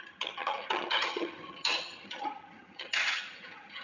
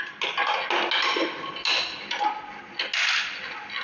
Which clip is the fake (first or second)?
first